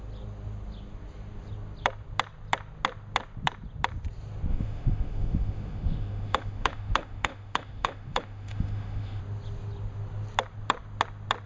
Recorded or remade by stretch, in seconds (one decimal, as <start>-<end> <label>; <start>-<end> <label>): 0.0-4.5 recorded; 4.5-9.2 remade; 9.2-11.5 recorded